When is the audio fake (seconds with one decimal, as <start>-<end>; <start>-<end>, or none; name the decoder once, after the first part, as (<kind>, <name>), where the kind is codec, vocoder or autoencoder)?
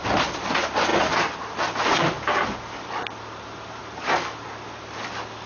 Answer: none